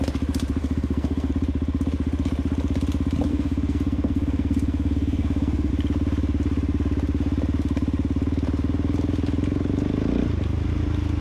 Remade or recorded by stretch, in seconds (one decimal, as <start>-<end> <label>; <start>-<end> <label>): 0.0-0.6 recorded; 0.6-1.3 remade; 1.3-3.3 recorded; 3.3-5.7 remade; 5.7-11.2 recorded